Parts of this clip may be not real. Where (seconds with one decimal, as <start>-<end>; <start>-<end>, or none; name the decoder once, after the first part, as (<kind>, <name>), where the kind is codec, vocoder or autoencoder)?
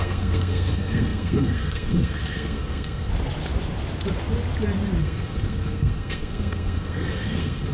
0.0-3.1 (codec, SNAC); 5.0-7.7